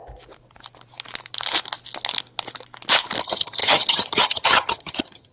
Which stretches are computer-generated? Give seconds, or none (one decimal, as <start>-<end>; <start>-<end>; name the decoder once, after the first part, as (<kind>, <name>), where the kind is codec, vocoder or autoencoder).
3.2-5.3 (vocoder, HiFi-GAN)